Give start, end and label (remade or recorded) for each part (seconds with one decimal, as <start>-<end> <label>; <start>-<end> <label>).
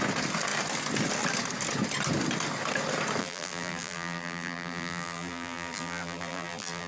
0.0-3.2 recorded; 3.2-6.9 remade